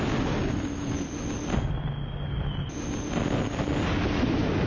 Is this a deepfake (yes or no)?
no